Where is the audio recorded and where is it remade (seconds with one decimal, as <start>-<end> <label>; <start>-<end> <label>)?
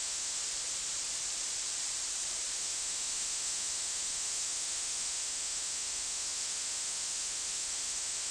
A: 0.0-0.4 remade; 0.4-2.6 recorded; 2.6-8.3 remade